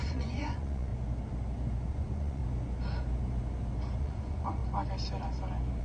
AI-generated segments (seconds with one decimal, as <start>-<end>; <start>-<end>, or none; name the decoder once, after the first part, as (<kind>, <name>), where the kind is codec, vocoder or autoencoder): 0.0-0.9 (vocoder, Vocos); 1.9-2.4; 4.0-4.6